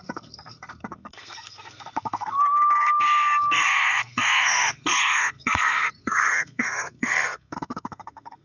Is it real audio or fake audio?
fake